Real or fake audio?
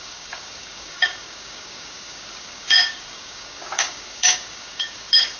fake